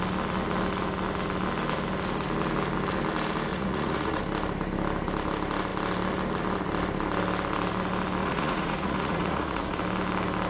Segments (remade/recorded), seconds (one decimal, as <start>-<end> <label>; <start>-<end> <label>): 0.0-3.5 recorded; 3.5-4.2 remade; 4.2-8.2 recorded; 8.2-9.8 remade; 9.8-10.5 recorded